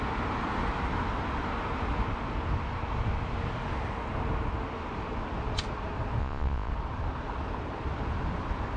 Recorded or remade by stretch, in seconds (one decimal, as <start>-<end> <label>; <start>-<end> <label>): 0.0-6.2 recorded; 6.2-6.7 remade; 6.7-8.8 recorded